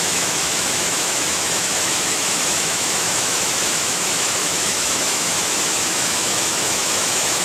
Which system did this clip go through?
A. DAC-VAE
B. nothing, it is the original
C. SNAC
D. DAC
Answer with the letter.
A